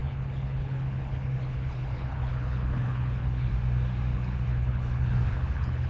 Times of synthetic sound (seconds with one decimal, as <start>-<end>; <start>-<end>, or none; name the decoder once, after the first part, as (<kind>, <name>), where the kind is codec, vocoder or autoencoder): 0.0-3.5 (codec, HILCodec); 4.1-5.9